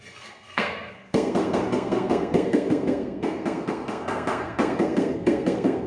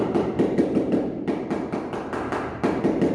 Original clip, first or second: second